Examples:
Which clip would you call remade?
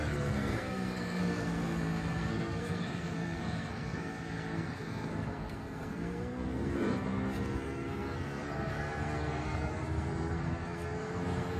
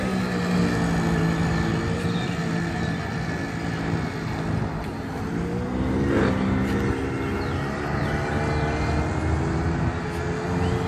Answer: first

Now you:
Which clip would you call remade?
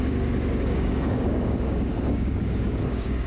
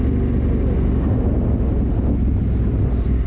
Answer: first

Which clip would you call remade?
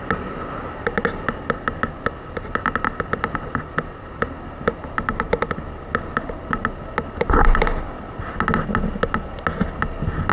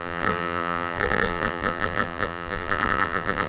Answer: second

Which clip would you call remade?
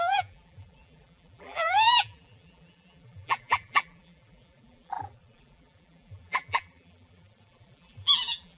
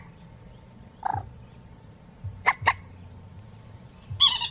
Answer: first